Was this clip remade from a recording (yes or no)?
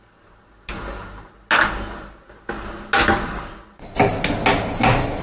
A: no